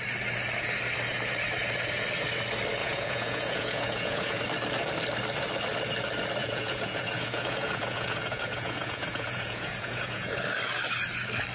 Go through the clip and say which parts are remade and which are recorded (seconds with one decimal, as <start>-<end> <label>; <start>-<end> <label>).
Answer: 0.0-2.8 recorded; 2.8-4.4 remade; 4.4-6.4 recorded; 6.4-10.4 remade; 10.4-11.5 recorded